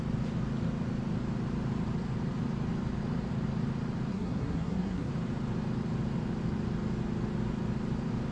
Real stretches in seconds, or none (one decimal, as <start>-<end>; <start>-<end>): 0.0-4.1; 5.1-8.3